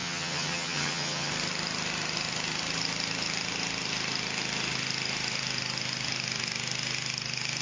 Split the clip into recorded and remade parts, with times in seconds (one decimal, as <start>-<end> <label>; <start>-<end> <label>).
0.0-1.3 remade; 1.3-7.6 recorded